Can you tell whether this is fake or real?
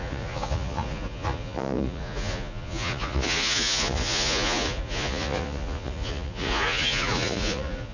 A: fake